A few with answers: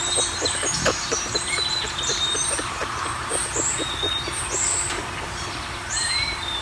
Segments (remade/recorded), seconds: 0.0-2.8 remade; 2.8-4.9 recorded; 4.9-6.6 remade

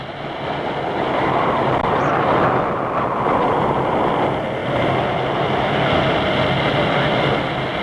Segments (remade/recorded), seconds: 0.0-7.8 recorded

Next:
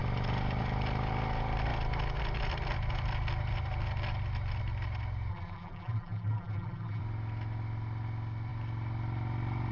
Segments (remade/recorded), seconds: 0.0-5.3 recorded; 5.3-7.0 remade; 7.0-9.7 recorded

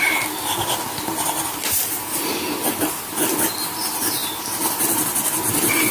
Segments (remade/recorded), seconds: 0.0-1.1 recorded; 1.1-2.3 remade; 2.3-4.2 recorded; 4.2-5.0 remade; 5.0-5.9 recorded

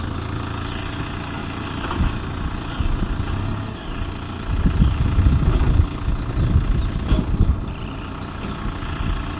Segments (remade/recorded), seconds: 0.0-1.4 recorded; 1.4-1.9 remade; 1.9-9.4 recorded